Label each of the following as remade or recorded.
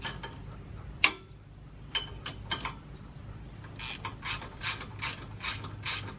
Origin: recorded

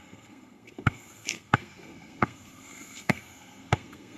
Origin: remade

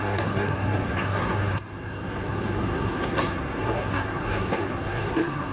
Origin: remade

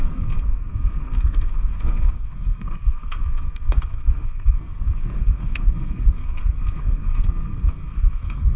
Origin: remade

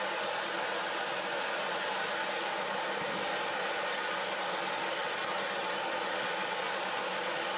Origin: recorded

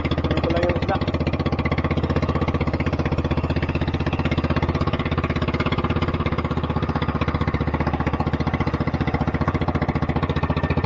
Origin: recorded